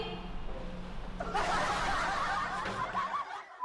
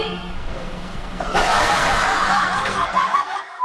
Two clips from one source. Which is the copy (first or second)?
second